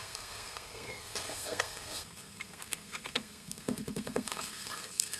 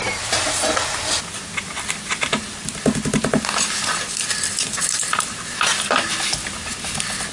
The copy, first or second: first